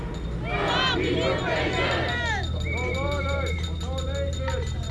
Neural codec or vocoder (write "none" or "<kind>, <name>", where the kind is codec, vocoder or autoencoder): none